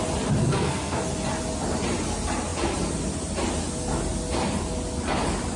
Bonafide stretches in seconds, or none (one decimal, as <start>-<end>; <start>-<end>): 0.0-0.4; 1.0-5.6